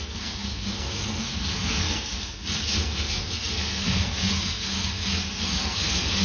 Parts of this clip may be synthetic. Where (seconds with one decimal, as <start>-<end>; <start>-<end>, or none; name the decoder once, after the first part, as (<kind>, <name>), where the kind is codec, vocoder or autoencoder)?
0.0-6.2 (codec, SNAC)